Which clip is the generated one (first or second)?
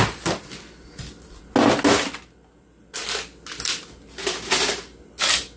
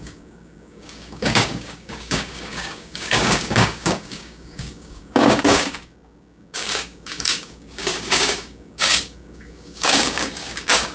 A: second